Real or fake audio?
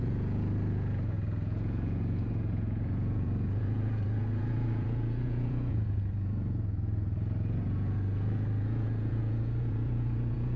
fake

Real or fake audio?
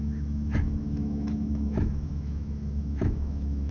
fake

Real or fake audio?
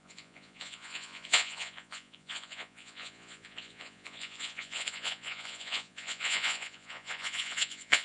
fake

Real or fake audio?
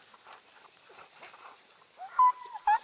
real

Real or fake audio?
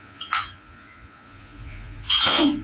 fake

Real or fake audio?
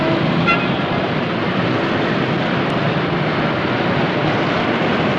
real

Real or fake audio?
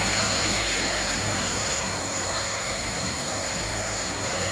fake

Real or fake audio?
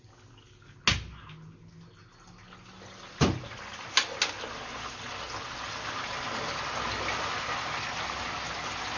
real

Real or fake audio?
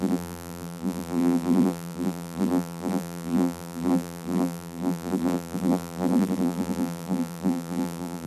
fake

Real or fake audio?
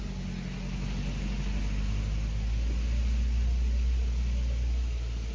real